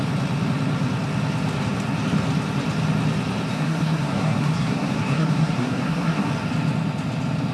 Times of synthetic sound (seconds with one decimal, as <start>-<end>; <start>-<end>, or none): 3.5-6.3